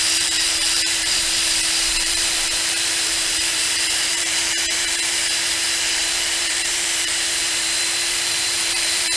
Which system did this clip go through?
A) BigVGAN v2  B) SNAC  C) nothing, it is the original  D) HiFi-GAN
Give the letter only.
A